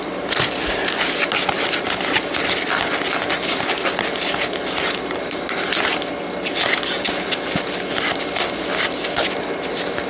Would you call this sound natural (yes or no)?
yes